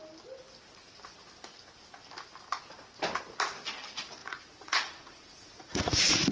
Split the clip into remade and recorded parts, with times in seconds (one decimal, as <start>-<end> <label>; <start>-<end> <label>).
0.0-4.2 recorded; 4.2-6.3 remade